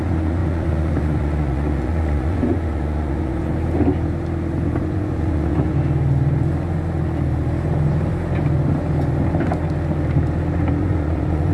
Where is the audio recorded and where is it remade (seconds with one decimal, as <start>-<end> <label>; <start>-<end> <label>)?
0.0-3.5 remade; 3.5-4.8 recorded; 4.8-5.7 remade; 5.7-10.8 recorded; 10.8-11.5 remade